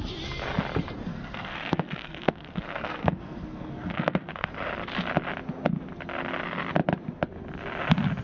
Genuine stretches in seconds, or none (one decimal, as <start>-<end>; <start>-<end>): 0.0-1.1; 4.5-8.2